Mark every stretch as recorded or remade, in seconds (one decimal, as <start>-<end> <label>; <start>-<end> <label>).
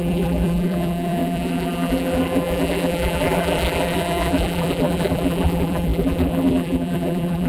0.0-7.5 remade